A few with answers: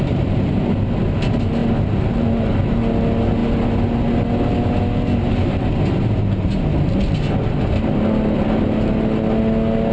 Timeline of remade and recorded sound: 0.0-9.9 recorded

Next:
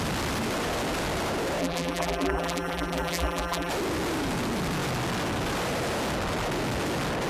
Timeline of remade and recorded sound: 0.0-1.6 recorded; 1.6-3.7 remade; 3.7-7.3 recorded